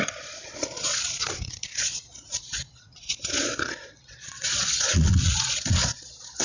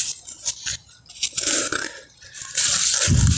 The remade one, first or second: first